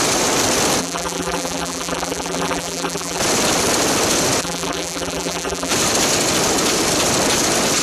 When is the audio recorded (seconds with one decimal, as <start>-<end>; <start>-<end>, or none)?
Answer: 0.0-0.8; 3.2-4.4; 5.7-7.8